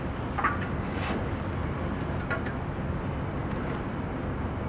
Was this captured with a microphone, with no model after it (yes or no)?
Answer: yes